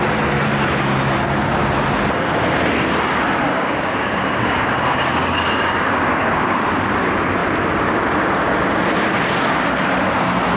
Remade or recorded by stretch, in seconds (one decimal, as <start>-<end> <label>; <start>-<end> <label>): 0.0-3.5 recorded; 3.5-6.7 remade; 6.7-10.6 recorded